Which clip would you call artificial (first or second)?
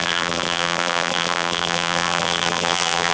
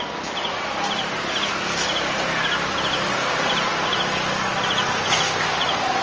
first